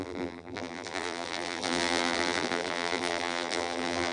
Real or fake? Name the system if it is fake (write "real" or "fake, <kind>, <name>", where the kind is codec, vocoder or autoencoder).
fake, vocoder, BigVGAN v2